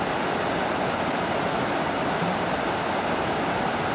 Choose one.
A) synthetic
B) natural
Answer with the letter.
B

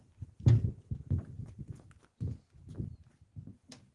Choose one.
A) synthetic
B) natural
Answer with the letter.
B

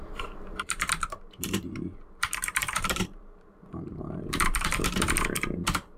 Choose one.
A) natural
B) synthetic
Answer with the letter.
B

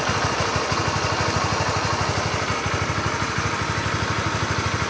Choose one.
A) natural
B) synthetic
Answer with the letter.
A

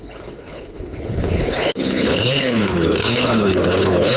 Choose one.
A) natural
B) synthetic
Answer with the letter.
B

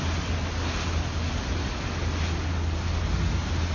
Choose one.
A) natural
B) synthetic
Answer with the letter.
A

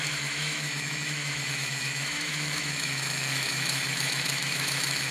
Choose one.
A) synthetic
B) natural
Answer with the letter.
A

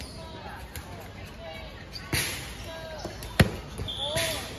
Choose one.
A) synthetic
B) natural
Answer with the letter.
B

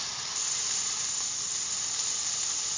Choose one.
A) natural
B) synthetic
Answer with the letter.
A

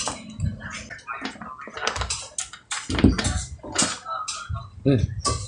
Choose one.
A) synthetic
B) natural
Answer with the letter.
B